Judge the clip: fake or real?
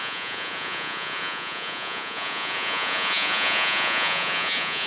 fake